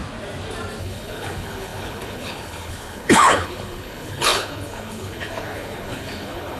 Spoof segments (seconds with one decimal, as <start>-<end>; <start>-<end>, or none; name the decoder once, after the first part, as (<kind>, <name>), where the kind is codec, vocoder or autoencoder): 0.8-6.6 (codec, HILCodec)